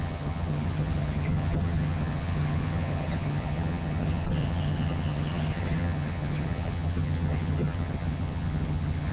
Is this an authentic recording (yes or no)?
no